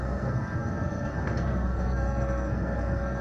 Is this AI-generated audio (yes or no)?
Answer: yes